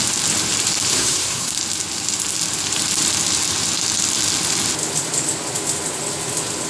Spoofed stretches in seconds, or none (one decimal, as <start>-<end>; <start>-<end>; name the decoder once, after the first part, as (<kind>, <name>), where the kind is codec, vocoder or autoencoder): 0.9-1.5 (codec, SNAC)